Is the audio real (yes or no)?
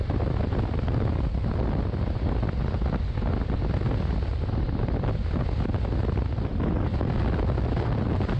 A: yes